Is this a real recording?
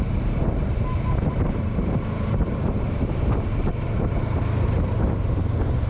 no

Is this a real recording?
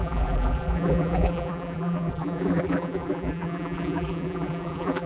no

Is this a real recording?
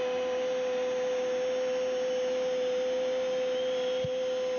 yes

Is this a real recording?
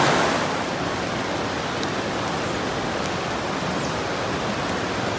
yes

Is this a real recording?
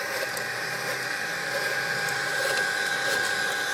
no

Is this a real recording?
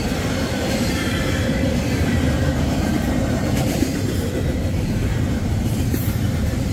no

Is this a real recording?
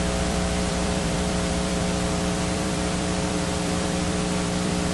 no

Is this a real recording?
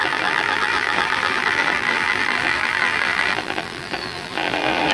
no